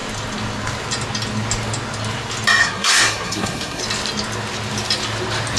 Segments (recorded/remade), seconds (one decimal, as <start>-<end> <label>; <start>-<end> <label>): 0.0-2.6 recorded; 2.6-3.8 remade; 3.8-5.6 recorded